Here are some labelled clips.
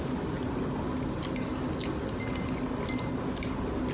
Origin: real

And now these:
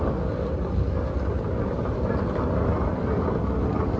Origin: real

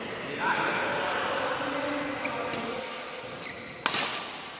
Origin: real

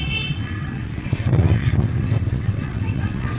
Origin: fake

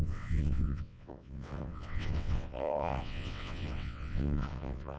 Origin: fake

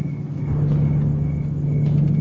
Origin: real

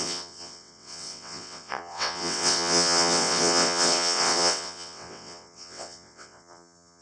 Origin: fake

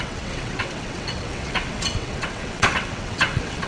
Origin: fake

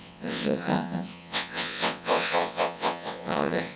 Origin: fake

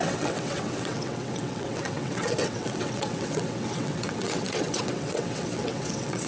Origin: fake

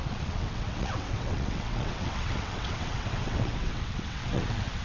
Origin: fake